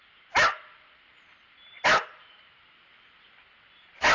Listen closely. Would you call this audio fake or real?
real